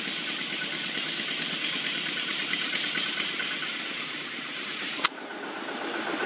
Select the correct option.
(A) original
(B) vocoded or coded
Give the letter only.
A